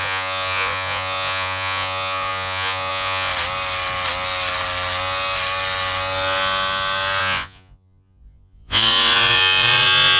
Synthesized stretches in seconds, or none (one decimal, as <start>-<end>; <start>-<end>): 0.0-3.3; 7.2-10.2